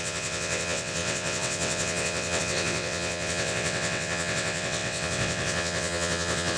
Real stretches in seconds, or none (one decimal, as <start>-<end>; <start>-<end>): none